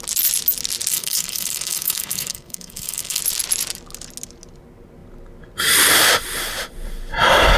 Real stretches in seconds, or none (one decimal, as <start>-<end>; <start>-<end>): 0.0-0.9; 3.2-7.6